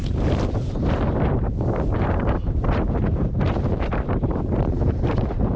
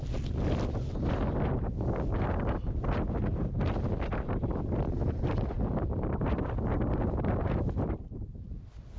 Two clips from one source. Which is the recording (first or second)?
second